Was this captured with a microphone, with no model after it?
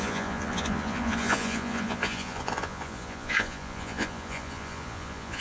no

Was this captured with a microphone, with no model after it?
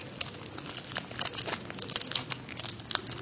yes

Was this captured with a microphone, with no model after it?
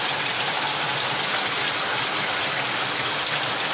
yes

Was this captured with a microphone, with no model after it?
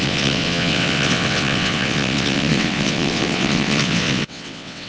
no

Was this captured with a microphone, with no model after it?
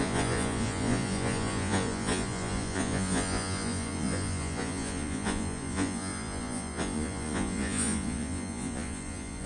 no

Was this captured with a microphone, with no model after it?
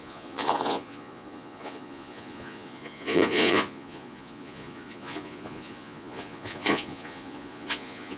no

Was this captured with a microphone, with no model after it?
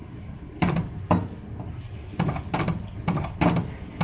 yes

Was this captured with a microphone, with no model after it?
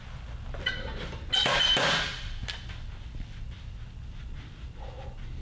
yes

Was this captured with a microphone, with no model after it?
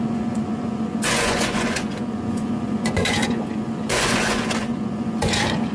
no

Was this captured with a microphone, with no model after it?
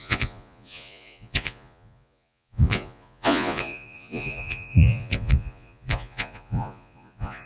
no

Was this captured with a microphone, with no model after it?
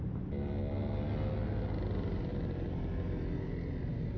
yes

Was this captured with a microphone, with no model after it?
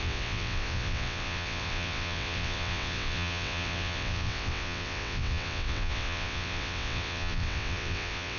no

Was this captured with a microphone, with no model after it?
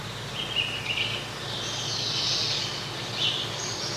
yes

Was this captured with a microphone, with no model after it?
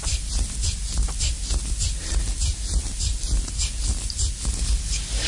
yes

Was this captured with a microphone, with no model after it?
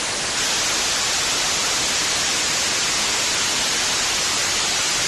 yes